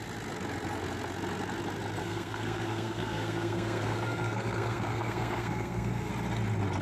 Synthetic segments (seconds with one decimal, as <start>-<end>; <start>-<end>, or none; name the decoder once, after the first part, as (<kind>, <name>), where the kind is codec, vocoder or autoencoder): 2.0-6.1 (codec, SNAC)